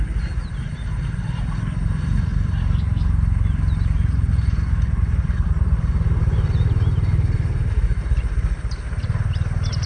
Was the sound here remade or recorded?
recorded